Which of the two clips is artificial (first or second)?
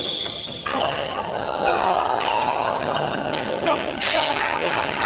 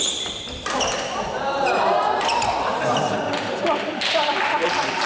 first